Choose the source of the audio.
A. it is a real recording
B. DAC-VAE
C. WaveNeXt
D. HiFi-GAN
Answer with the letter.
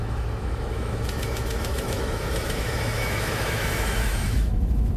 B